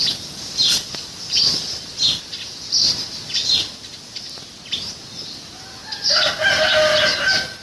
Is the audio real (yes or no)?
yes